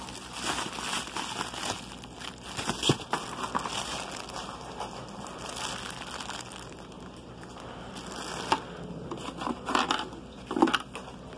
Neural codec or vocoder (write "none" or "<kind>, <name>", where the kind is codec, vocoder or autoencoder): none